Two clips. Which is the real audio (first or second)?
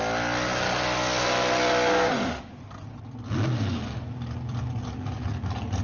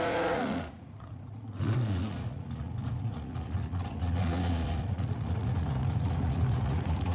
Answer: first